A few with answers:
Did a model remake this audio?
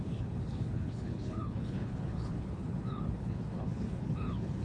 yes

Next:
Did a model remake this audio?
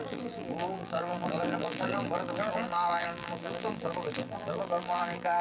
yes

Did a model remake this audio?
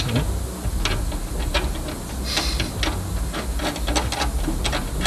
no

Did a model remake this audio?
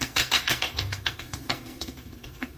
yes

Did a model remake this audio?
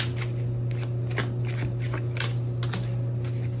no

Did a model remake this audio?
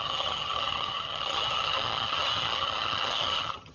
yes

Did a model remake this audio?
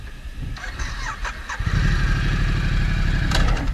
no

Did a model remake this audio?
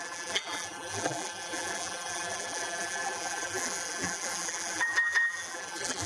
yes